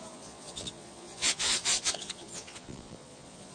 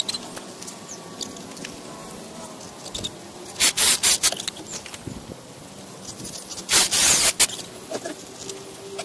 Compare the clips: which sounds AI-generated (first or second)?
first